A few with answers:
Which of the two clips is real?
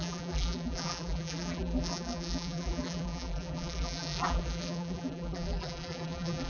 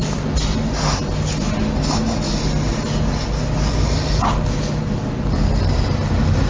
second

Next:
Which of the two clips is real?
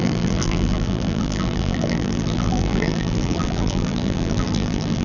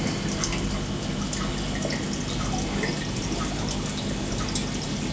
second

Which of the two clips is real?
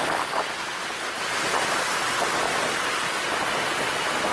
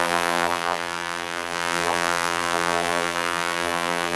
first